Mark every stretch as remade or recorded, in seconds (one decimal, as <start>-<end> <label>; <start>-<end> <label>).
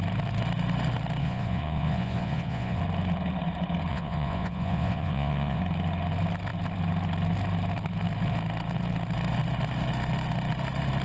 0.0-1.2 recorded; 1.2-2.8 remade; 2.8-3.9 recorded; 3.9-5.6 remade; 5.6-11.0 recorded